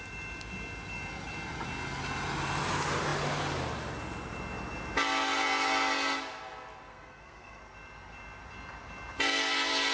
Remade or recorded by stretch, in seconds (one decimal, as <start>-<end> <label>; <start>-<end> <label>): 0.0-6.9 recorded; 6.9-7.6 remade; 7.6-9.9 recorded